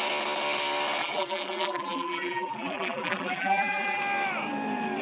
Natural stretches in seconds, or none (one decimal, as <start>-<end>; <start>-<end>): 0.0-1.0; 4.0-5.0